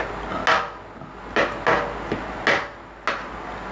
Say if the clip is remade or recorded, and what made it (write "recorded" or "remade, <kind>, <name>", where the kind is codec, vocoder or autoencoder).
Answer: recorded